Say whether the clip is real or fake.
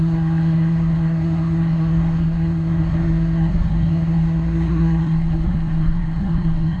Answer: fake